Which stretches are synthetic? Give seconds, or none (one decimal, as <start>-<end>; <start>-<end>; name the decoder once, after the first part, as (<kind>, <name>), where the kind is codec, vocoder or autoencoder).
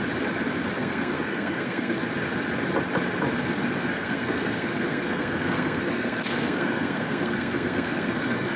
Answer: 0.8-2.0 (codec, SNAC); 3.8-8.6